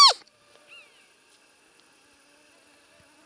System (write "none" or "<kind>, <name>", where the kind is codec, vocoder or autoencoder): none